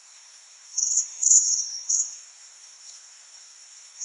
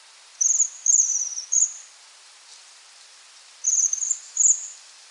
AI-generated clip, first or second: first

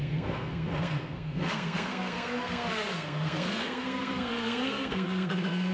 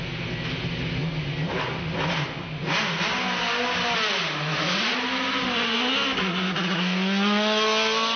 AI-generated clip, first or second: first